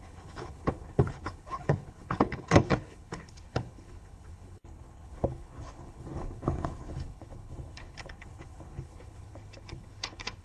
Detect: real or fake fake